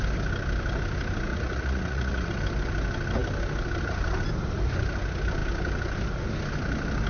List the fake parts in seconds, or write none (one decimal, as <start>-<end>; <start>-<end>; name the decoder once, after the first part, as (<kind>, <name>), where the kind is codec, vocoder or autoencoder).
1.3-2.3 (vocoder, Vocos)